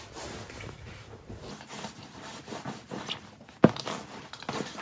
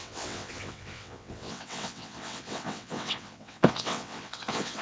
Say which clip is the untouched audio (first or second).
first